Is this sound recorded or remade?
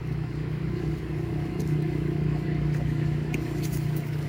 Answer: remade